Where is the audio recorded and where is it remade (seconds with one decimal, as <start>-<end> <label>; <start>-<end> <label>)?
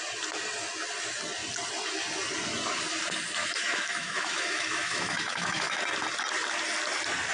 0.0-3.4 recorded; 3.4-5.8 remade; 5.8-7.3 recorded